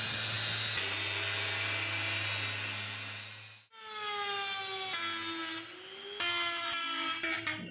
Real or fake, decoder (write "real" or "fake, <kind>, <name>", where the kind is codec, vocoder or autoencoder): real